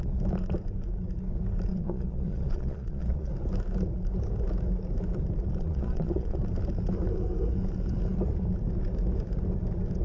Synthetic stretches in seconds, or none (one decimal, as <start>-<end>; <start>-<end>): 1.7-3.3; 5.5-6.4